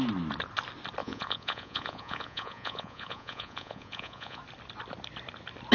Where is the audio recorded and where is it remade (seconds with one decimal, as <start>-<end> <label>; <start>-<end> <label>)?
0.0-1.0 recorded; 1.0-4.4 remade; 4.4-5.7 recorded